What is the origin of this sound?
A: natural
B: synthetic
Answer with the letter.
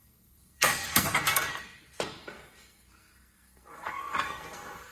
B